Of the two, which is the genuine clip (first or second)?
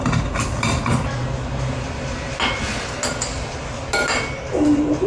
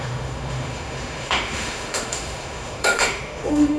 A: first